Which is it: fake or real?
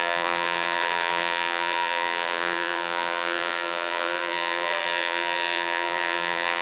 fake